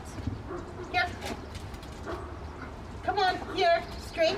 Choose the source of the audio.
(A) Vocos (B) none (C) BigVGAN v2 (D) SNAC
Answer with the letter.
B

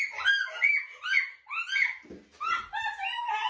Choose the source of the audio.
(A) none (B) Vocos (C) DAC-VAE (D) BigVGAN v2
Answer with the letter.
A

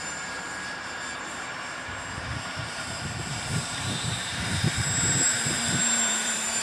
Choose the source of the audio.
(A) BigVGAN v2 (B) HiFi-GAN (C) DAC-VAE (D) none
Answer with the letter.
A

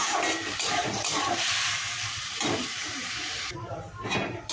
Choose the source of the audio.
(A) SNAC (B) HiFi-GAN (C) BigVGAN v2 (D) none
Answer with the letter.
C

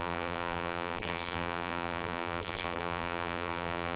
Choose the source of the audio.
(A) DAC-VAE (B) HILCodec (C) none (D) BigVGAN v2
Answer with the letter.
D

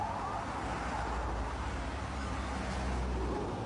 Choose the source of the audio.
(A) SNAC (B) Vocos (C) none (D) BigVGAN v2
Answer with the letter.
C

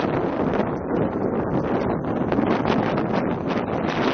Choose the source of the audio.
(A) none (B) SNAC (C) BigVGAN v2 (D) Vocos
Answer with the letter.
A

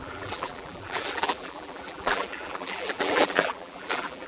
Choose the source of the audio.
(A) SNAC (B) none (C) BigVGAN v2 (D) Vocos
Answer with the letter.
C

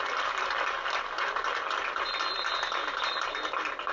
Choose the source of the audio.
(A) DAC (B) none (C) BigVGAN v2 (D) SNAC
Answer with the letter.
B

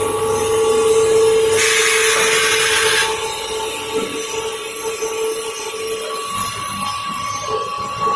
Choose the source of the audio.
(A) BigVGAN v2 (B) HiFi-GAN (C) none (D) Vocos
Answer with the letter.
C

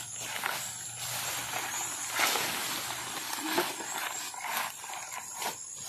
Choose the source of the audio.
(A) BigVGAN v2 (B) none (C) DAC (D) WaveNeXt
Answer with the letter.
B